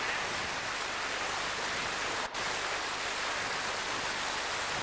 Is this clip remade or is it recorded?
recorded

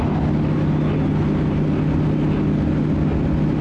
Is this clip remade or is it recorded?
recorded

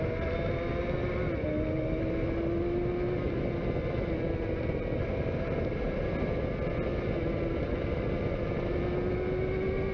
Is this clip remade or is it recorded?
recorded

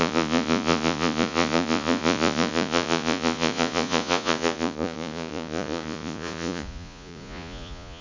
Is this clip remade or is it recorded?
remade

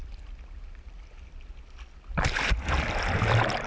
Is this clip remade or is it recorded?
recorded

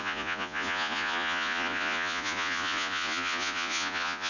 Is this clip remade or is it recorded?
remade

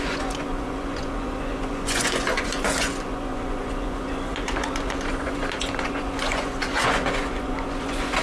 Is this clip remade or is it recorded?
remade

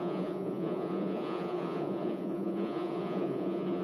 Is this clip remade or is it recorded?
remade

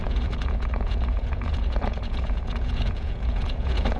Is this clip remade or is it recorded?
remade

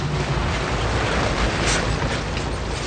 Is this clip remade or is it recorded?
recorded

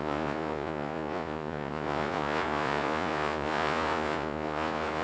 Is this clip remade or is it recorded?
remade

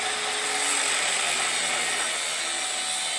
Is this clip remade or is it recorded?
recorded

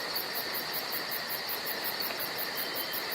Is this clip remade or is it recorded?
recorded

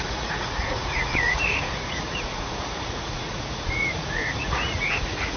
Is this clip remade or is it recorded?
remade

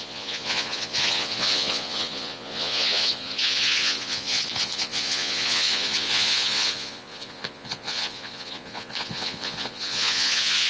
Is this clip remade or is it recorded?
remade